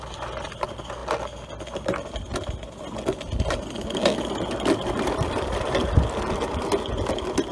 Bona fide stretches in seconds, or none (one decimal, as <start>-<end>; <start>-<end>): 0.0-7.5